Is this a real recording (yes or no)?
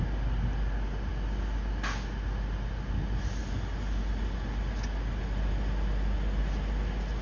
yes